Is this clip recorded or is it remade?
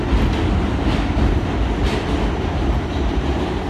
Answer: recorded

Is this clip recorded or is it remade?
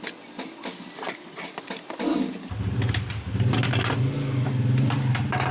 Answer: recorded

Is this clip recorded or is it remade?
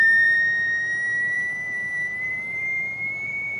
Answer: remade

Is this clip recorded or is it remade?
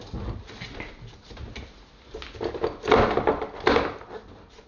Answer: recorded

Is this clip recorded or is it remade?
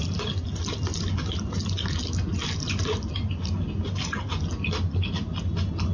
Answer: recorded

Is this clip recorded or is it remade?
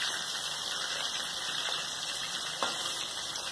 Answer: remade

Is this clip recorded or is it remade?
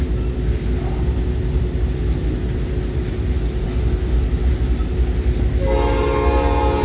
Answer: recorded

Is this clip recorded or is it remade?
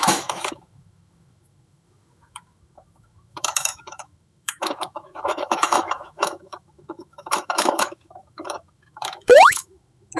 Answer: remade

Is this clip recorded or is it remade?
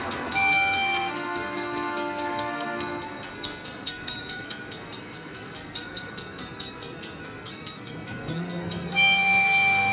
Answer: remade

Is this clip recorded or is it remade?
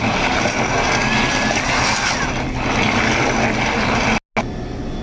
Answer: recorded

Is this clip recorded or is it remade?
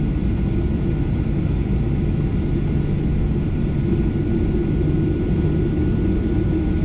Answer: recorded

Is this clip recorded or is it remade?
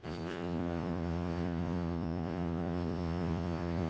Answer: remade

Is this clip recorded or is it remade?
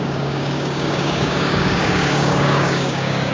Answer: remade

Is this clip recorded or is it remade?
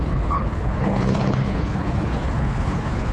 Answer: remade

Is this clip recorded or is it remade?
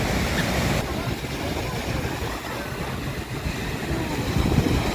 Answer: recorded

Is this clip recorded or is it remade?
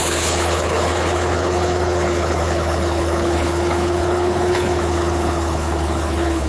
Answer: remade